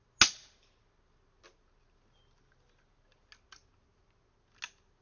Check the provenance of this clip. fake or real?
real